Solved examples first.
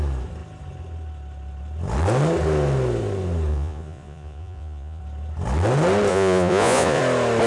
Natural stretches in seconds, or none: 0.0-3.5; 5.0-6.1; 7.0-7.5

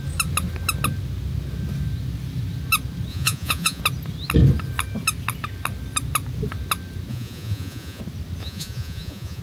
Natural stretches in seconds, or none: 0.0-3.1; 3.8-7.1; 8.0-8.4

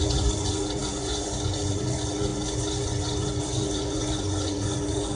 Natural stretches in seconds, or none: none